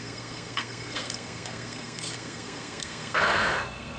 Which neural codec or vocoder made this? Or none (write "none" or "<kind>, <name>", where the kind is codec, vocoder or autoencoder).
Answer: codec, SNAC